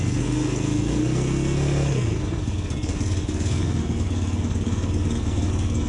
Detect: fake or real fake